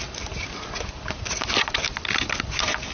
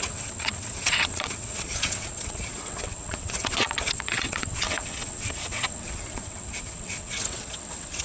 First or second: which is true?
first